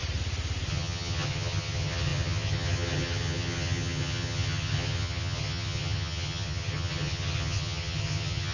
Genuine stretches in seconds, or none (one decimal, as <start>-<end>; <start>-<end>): 0.0-0.7